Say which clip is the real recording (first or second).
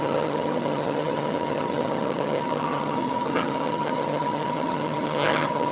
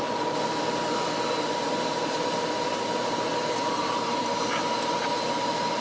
second